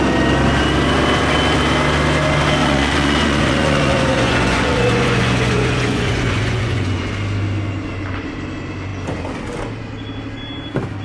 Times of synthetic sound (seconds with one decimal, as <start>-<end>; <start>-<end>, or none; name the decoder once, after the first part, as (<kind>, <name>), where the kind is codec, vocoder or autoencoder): 2.6-7.1 (vocoder, Vocos)